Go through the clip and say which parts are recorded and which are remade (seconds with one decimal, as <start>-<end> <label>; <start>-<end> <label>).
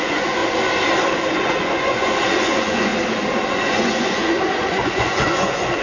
0.0-0.4 remade; 0.4-1.3 recorded; 1.3-2.9 remade; 2.9-3.5 recorded; 3.5-5.8 remade